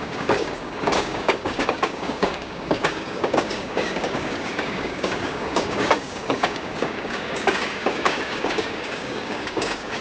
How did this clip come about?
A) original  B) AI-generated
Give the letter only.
B